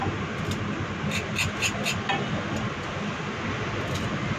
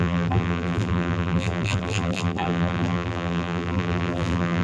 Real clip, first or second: first